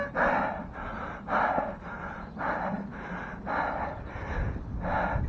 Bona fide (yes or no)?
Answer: yes